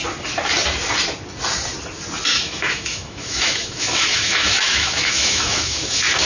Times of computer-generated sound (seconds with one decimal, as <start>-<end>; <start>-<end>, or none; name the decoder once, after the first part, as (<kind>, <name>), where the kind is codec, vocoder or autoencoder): 2.3-6.3 (autoencoder, DAC-VAE)